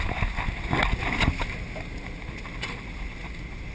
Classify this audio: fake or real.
real